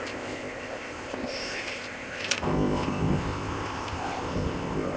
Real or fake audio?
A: fake